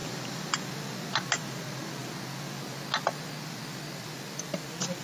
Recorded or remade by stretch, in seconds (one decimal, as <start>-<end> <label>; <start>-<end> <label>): 0.0-0.5 remade; 0.5-5.0 recorded